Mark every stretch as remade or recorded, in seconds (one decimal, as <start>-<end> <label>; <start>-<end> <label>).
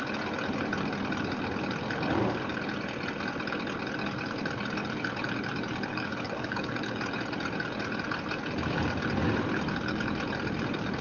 0.0-5.9 recorded; 5.9-7.0 remade; 7.0-11.0 recorded